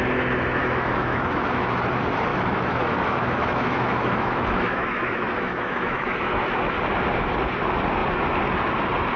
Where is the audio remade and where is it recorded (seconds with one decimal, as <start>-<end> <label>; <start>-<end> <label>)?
0.0-0.6 recorded; 0.6-1.7 remade; 1.7-2.3 recorded; 2.3-6.7 remade; 6.7-9.2 recorded